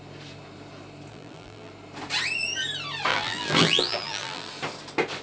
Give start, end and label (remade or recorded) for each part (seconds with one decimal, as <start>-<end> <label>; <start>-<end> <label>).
0.0-1.1 recorded; 1.1-1.7 remade; 1.7-3.1 recorded; 3.1-4.5 remade; 4.5-5.2 recorded